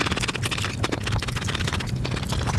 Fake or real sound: real